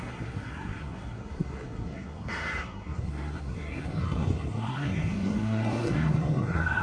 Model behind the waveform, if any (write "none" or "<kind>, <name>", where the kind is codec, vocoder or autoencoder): codec, SNAC